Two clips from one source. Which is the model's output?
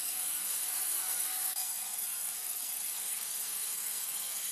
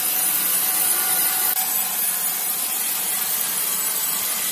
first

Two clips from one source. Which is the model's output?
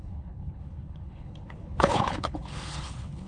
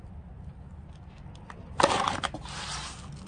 first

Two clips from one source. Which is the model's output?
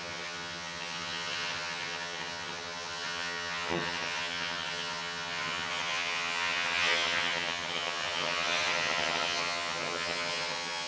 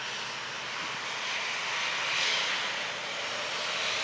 first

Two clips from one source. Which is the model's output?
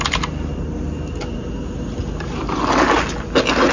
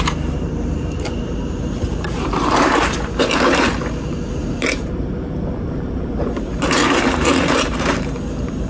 second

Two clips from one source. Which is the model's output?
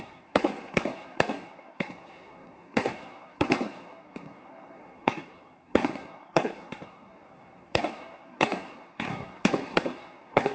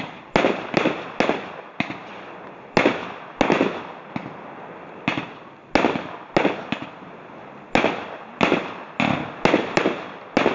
first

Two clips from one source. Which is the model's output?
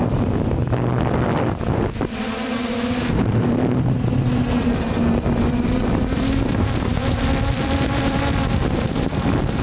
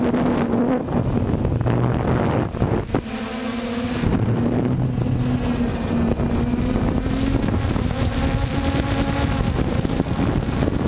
first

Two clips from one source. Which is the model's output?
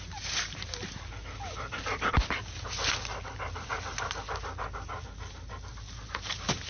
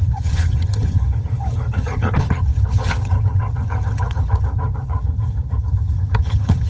second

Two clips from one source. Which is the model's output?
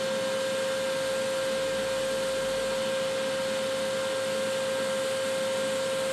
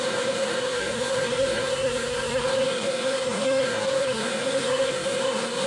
second